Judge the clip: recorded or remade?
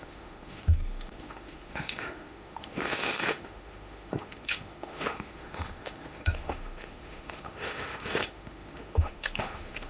remade